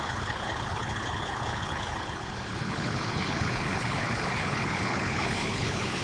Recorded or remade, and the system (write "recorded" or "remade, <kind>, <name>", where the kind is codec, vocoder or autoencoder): remade, codec, HILCodec